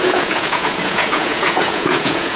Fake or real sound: fake